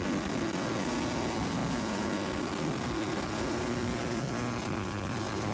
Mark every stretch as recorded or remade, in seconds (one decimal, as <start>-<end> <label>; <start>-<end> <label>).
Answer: 0.0-5.5 recorded